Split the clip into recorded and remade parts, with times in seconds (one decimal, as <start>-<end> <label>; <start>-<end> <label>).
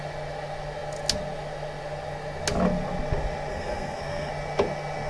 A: 0.0-3.5 recorded; 3.5-4.3 remade; 4.3-5.1 recorded